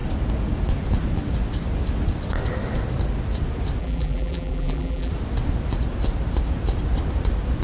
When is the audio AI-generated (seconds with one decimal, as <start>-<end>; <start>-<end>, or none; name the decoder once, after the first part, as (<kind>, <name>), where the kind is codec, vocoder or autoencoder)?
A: 3.8-5.1 (vocoder, BigVGAN v2)